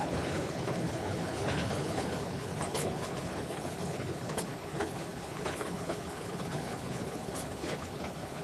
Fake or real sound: fake